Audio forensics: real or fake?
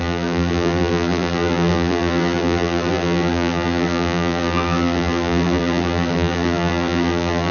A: fake